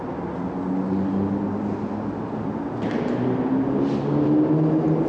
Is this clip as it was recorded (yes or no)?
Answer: yes